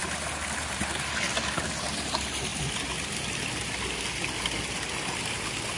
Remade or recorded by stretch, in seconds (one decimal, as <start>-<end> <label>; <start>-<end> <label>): 0.0-5.8 recorded